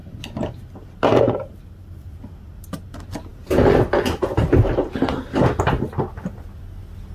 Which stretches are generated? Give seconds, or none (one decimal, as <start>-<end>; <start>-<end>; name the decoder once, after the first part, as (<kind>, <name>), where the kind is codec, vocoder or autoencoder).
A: none